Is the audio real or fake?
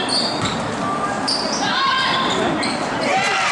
real